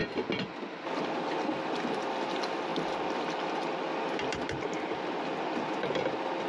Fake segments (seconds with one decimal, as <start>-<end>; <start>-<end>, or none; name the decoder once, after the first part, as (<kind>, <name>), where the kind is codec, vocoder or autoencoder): none